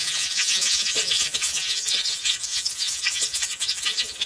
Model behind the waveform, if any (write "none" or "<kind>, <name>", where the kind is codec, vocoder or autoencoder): vocoder, Vocos